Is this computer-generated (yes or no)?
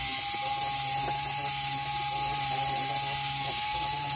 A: no